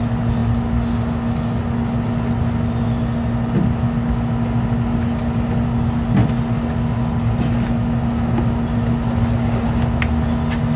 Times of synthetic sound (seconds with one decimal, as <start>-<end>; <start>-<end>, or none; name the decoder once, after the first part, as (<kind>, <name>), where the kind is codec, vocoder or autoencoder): none